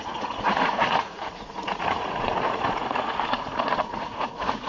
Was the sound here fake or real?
fake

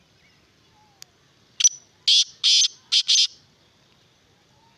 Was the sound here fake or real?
real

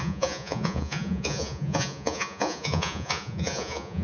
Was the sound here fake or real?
fake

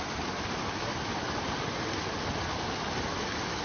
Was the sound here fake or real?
real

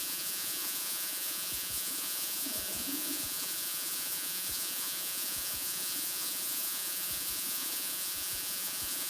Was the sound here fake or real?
fake